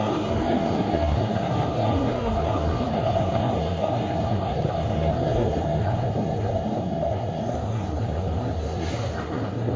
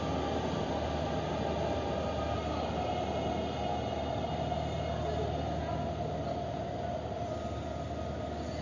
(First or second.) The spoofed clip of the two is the first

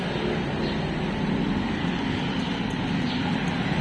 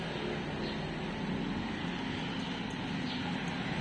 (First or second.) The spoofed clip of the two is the first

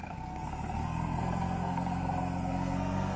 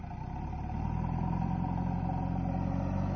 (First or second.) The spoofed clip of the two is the first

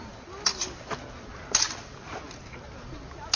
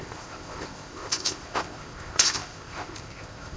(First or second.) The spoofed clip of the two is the second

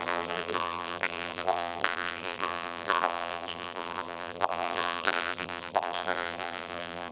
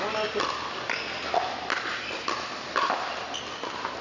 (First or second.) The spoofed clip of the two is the first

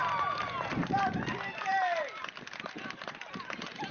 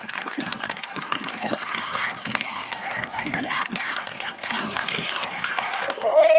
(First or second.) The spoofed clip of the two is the second